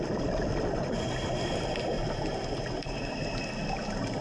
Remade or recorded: recorded